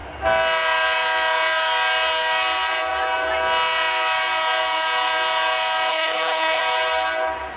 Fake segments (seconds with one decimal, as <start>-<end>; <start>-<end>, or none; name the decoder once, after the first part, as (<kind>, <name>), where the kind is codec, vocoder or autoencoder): 5.9-6.6 (codec, HILCodec)